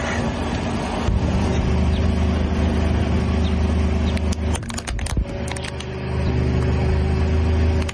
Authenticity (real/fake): real